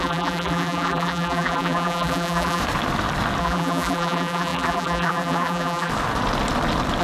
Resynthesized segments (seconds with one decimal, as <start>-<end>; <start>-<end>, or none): 0.0-2.6; 3.4-5.9